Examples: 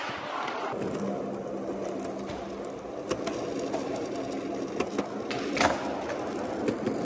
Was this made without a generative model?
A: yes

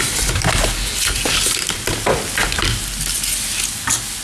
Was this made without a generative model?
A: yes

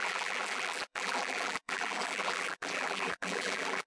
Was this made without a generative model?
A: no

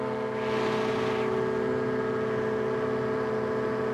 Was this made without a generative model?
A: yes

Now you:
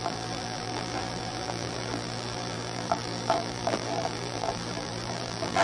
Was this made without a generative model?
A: no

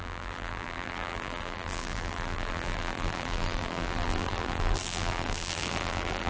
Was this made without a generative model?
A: no